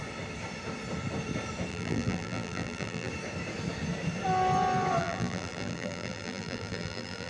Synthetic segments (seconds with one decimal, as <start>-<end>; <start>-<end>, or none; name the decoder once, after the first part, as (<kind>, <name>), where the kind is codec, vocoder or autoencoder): 1.7-3.1 (vocoder, BigVGAN v2); 5.0-7.3